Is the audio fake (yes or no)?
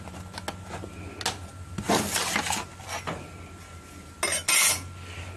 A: no